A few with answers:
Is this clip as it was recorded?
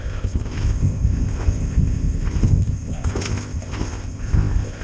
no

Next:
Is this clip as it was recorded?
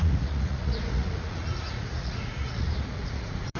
no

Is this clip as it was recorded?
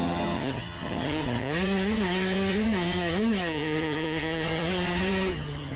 no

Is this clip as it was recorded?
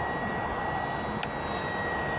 yes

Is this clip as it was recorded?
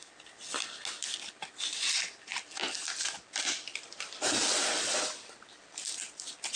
yes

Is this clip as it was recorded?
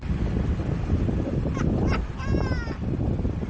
yes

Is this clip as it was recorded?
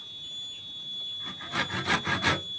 yes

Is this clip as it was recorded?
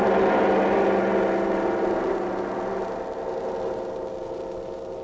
yes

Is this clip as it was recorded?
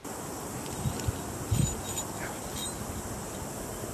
yes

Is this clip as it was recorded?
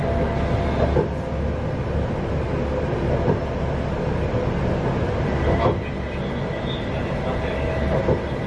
yes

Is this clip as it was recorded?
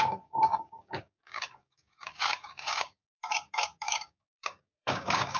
no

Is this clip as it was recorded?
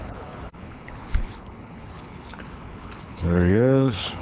no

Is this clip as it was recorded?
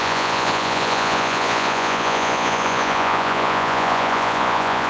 no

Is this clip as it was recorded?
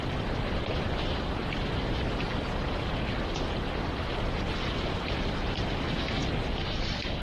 yes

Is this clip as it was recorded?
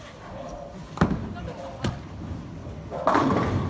yes